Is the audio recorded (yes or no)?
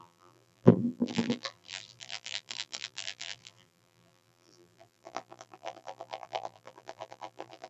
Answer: no